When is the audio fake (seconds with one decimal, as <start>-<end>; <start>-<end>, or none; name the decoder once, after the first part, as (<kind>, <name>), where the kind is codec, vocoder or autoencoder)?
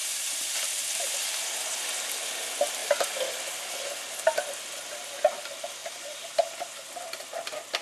0.0-1.8 (vocoder, BigVGAN v2); 5.8-6.9